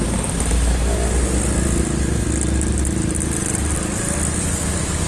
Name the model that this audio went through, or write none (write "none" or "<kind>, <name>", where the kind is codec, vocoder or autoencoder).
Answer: none